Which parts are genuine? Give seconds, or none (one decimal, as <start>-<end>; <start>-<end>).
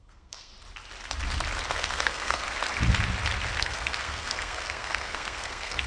0.5-1.7; 2.6-3.6